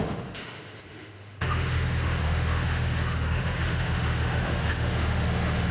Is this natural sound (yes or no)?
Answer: no